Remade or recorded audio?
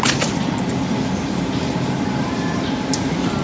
recorded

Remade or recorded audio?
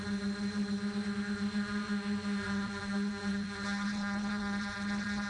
remade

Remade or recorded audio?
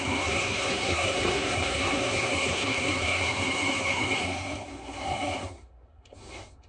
remade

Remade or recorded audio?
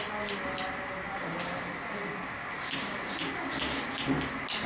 recorded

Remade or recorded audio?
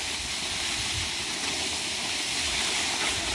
recorded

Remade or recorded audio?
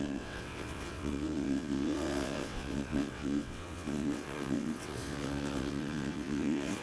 remade